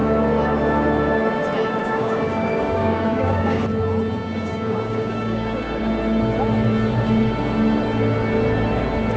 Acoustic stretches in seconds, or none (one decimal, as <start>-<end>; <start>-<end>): 0.0-1.8; 3.6-4.2; 5.8-9.2